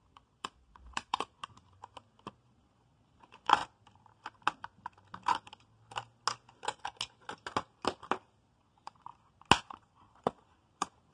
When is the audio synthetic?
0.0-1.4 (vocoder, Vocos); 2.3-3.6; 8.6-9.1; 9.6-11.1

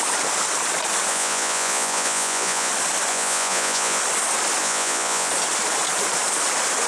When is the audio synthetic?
1.1-2.7 (vocoder, Vocos); 3.1-4.0; 4.6-5.3

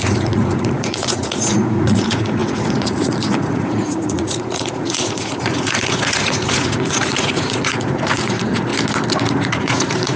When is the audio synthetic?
0.0-8.7 (vocoder, Vocos); 9.3-10.2